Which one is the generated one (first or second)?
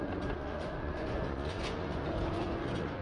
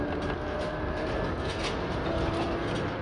first